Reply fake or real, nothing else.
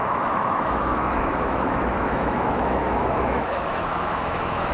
fake